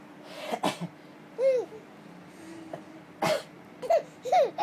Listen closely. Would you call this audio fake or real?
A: real